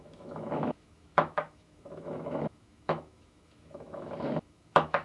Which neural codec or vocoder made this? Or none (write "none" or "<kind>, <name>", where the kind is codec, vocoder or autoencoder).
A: autoencoder, DAC-VAE